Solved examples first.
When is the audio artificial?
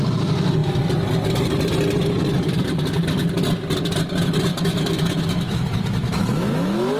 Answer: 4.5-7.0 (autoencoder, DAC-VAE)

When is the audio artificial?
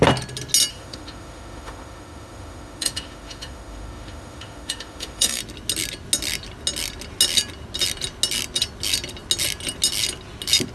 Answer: 0.7-5.4 (autoencoder, DAC-VAE)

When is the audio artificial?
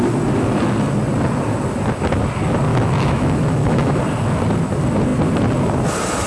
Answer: 2.7-4.0 (autoencoder, DAC-VAE)